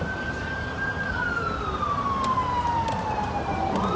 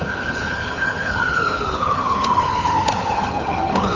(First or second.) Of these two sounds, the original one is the first